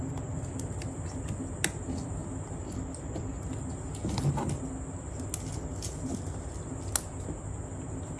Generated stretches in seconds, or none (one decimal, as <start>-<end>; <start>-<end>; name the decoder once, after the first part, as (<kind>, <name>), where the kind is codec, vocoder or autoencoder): none